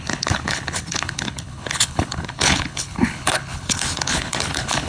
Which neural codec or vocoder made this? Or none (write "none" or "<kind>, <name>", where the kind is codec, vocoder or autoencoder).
codec, HILCodec